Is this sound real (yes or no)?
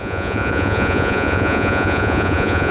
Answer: no